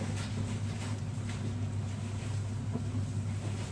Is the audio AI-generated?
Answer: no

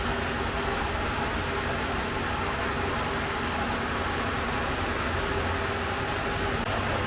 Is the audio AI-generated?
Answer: no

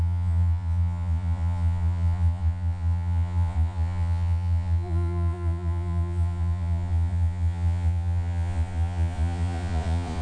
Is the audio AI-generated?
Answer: yes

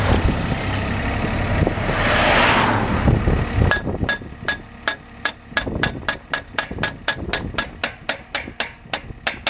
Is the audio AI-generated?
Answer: no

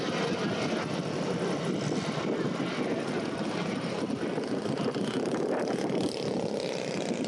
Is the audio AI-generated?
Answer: no